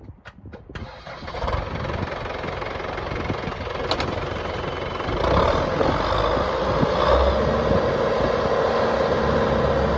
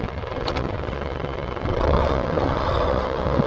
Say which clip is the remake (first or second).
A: second